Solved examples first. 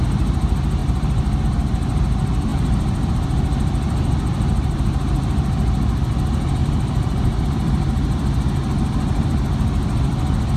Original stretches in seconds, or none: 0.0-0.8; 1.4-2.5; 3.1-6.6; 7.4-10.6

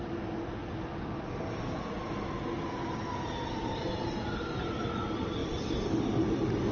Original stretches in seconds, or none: 0.0-6.7

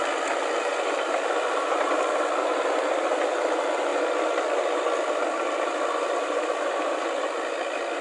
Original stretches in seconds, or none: 0.0-8.0

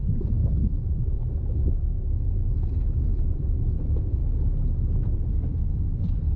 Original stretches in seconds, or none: 0.4-2.7; 4.2-4.7

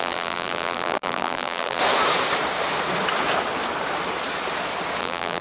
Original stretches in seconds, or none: 1.8-5.0

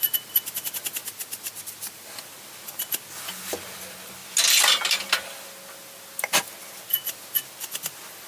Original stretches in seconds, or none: 0.0-1.0; 2.1-8.3